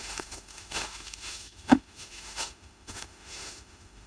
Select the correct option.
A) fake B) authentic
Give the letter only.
A